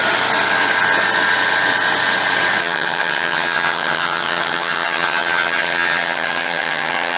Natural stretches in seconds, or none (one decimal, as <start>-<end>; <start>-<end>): 0.0-2.6